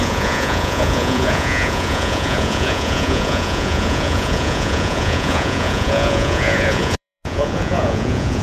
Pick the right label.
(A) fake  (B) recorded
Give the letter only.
A